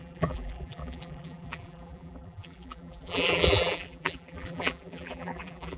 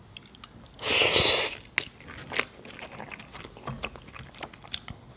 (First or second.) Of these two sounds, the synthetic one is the first